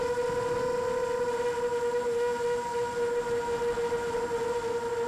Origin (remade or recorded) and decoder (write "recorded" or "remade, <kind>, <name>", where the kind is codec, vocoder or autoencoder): recorded